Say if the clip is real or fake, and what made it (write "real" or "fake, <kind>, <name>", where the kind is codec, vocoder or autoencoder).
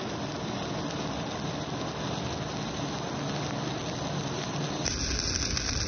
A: real